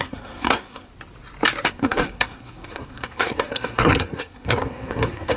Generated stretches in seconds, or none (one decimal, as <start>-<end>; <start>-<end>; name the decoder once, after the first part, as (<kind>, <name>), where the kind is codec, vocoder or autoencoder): 0.0-0.9 (codec, SNAC); 1.7-5.4

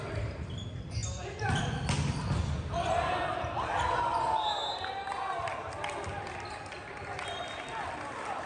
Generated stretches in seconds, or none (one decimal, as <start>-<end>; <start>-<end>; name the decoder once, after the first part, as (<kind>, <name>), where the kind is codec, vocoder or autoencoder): none

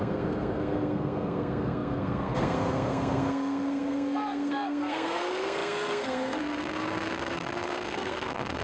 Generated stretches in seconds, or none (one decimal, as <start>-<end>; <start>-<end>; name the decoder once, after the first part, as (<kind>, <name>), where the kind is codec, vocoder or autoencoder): 0.0-8.6 (codec, SNAC)